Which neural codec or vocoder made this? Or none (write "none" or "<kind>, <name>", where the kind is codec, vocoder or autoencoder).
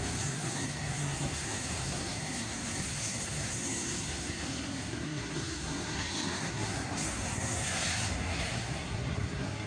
codec, SNAC